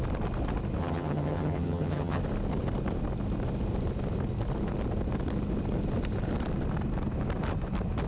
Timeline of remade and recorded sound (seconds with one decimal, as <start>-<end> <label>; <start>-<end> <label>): 0.0-0.8 recorded; 0.8-2.2 remade; 2.2-8.1 recorded